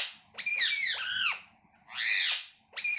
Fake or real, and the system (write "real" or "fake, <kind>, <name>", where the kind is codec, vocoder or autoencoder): real